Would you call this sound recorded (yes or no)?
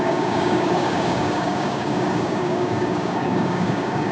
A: no